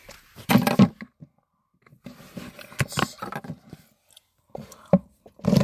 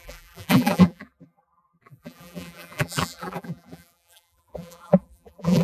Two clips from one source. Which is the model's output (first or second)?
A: second